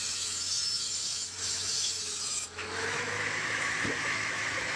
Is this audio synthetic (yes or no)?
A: yes